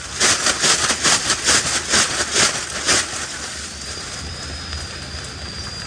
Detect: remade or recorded recorded